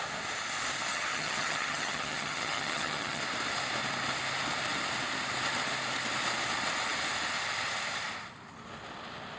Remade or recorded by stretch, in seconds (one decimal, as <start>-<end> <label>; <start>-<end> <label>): 0.0-0.9 recorded; 0.9-3.2 remade; 3.2-9.4 recorded